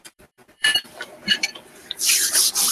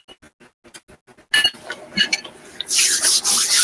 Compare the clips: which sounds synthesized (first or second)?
first